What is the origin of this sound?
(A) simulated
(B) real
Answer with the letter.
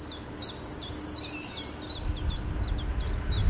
B